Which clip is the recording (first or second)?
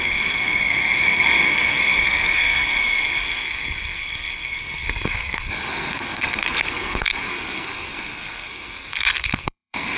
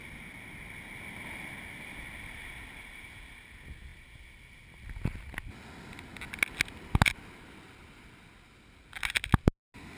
second